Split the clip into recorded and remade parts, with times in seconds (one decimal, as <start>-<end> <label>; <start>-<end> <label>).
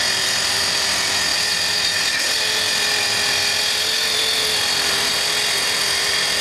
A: 0.0-6.4 recorded